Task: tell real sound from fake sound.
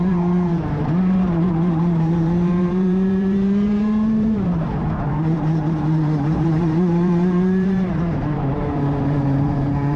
fake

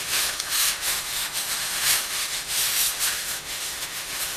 fake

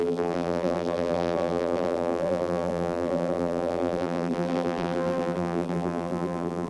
fake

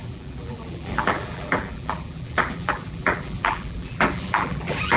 fake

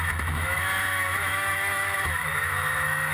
fake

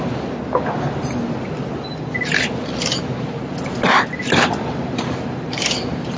real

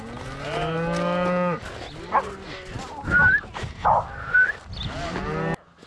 real